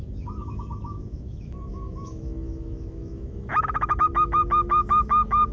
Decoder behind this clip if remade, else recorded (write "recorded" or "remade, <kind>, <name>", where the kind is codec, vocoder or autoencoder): remade, autoencoder, DAC-VAE